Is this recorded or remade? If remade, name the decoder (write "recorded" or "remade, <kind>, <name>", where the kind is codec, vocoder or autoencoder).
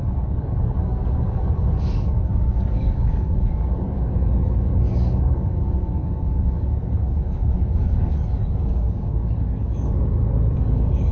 remade, codec, DAC